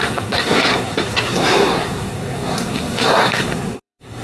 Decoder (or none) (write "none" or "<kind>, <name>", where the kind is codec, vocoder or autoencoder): codec, SNAC